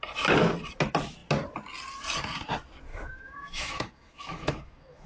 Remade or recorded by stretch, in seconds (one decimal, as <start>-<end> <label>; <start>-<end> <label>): 0.0-2.9 recorded; 2.9-5.1 remade